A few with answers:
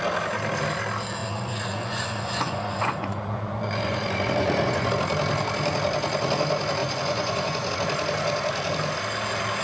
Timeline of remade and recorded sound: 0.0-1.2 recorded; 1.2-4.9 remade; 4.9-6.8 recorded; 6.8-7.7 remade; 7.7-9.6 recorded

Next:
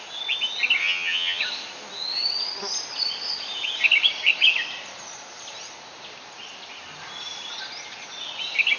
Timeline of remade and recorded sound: 0.0-0.8 recorded; 0.8-1.4 remade; 1.4-8.8 recorded